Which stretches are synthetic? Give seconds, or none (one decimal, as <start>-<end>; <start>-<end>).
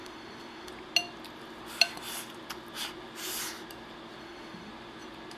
0.0-0.7; 4.2-4.7